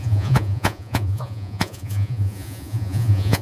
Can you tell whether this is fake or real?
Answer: fake